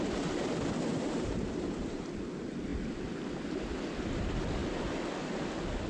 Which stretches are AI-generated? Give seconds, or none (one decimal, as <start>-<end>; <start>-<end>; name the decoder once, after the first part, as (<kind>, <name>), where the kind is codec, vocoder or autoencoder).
0.9-2.0 (vocoder, BigVGAN v2)